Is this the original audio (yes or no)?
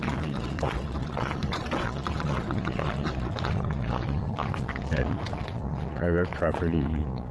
no